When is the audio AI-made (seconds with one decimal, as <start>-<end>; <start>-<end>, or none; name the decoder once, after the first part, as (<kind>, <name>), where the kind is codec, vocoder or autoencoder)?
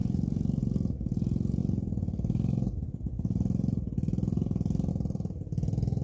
none